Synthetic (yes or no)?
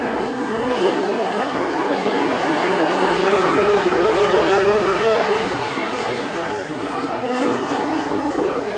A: yes